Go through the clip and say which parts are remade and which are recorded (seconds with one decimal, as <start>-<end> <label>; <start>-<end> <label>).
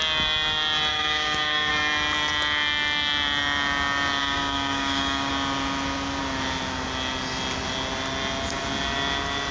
0.0-0.9 recorded; 0.9-1.7 remade; 1.7-4.2 recorded; 4.2-5.3 remade; 5.3-9.5 recorded